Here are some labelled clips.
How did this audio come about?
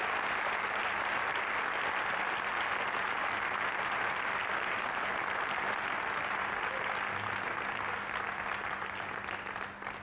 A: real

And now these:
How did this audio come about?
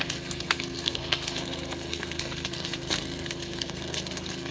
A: fake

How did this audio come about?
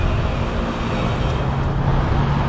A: real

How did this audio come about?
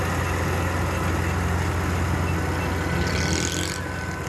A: real